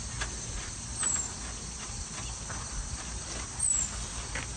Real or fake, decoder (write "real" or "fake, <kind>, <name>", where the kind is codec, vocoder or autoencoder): real